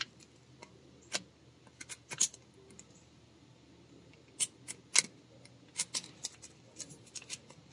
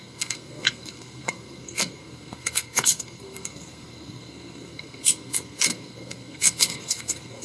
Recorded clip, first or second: first